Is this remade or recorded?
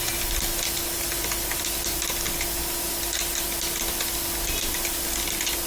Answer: recorded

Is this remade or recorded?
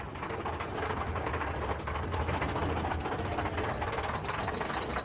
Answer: recorded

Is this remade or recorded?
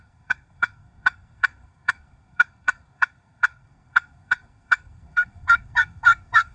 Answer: remade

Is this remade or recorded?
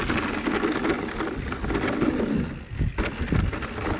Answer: recorded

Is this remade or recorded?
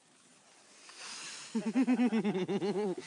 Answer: recorded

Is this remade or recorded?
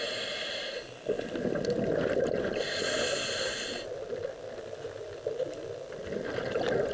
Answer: recorded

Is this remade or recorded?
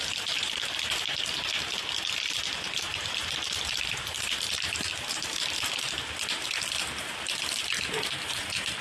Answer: remade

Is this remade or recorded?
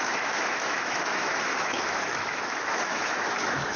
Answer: remade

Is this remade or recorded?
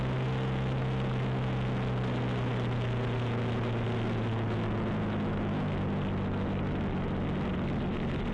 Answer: recorded